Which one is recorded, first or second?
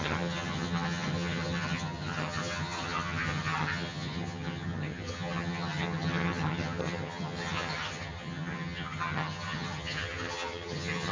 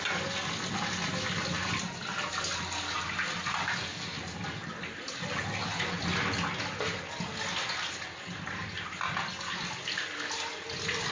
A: second